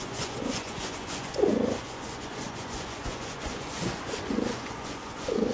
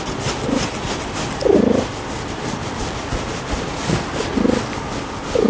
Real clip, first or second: second